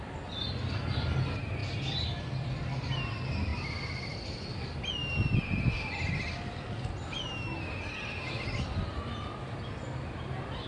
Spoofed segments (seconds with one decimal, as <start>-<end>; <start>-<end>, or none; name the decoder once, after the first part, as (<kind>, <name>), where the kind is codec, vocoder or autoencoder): none